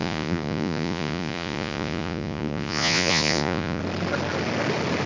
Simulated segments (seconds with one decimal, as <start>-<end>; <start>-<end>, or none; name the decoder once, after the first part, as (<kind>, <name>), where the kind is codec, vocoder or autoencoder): 0.0-3.8 (vocoder, Vocos)